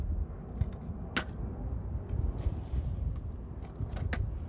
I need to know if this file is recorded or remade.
recorded